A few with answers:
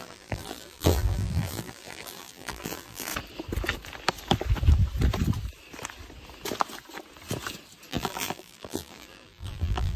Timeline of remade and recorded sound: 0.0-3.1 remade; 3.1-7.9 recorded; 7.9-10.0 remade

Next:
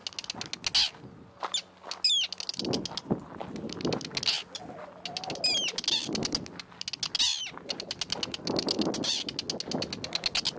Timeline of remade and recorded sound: 0.0-10.6 recorded

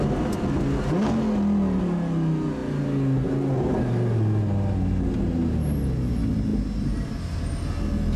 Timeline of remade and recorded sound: 0.0-8.2 recorded